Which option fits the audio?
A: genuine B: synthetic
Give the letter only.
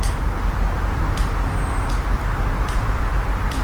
A